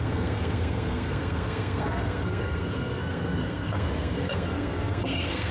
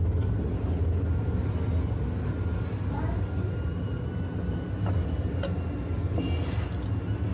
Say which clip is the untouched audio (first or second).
second